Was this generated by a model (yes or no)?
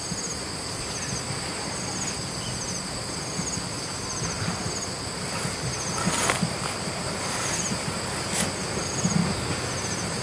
no